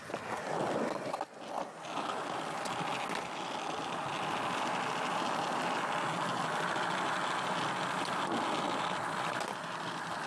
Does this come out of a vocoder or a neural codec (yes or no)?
no